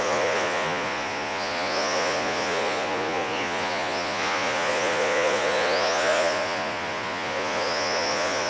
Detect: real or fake fake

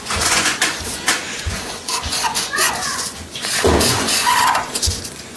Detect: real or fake fake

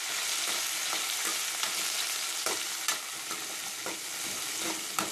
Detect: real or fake real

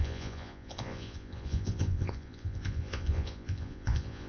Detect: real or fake fake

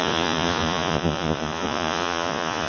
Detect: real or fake fake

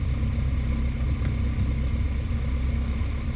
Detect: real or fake real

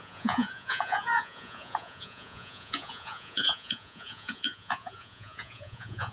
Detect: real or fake fake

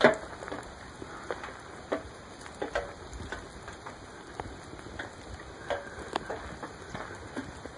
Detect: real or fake real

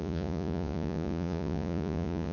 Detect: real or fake fake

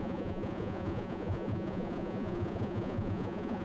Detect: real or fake fake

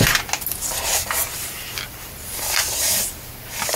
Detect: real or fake real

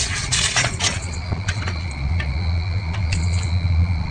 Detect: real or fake fake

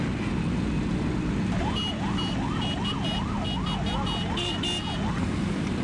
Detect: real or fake real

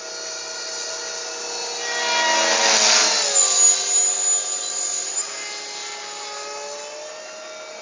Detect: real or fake real